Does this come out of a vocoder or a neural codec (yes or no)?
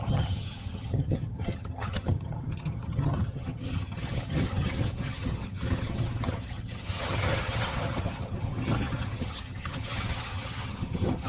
yes